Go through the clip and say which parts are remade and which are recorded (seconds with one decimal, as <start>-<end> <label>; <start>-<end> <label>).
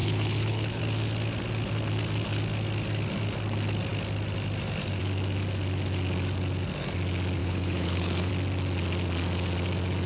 0.0-0.8 remade; 0.8-7.4 recorded; 7.4-8.3 remade; 8.3-10.1 recorded